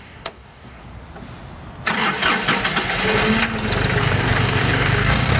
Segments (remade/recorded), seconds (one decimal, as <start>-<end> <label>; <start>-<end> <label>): 0.0-0.8 remade; 0.8-4.0 recorded; 4.0-5.4 remade